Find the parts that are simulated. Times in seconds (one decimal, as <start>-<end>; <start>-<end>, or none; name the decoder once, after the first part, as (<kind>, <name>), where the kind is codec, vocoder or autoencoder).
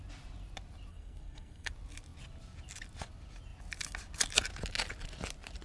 0.9-1.7 (codec, SNAC)